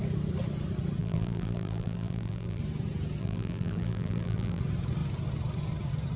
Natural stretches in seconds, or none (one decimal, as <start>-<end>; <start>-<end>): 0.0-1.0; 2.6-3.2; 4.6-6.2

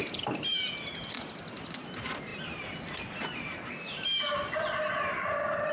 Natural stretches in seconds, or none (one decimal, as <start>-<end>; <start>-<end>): 0.0-5.7

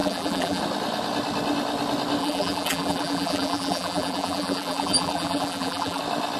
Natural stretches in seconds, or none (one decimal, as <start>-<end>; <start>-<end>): 0.6-2.2; 6.0-6.4